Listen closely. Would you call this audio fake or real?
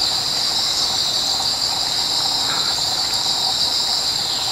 real